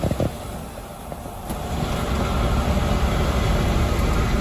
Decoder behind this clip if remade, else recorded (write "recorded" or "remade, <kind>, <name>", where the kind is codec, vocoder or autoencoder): recorded